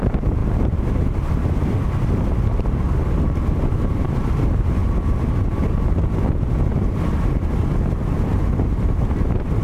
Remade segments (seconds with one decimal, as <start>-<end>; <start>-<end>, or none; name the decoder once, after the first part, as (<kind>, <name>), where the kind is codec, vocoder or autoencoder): 0.0-0.4 (vocoder, BigVGAN v2); 3.9-4.8; 8.9-9.6